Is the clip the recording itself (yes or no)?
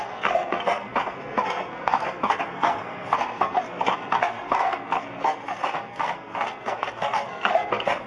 no